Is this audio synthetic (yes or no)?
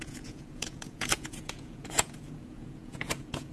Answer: yes